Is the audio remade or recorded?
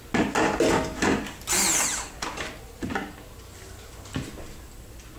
recorded